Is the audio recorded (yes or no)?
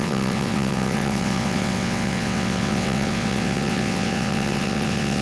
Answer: no